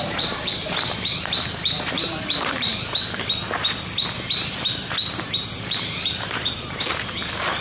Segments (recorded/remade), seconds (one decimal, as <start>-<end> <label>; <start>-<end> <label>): 0.0-2.7 remade; 2.7-5.1 recorded; 5.1-7.6 remade